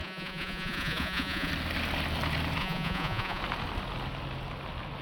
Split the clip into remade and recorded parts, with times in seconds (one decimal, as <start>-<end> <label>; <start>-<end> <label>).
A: 0.0-1.5 remade; 1.5-2.6 recorded; 2.6-3.4 remade; 3.4-5.0 recorded